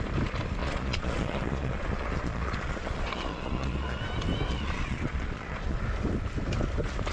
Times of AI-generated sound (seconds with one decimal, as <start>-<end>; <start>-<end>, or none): 0.6-4.0; 4.5-5.8